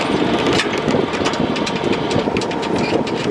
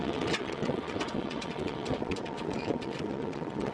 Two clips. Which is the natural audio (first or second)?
first